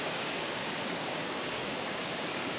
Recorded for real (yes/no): no